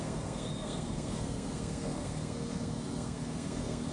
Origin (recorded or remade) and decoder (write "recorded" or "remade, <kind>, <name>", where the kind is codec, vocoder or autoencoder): remade, codec, SNAC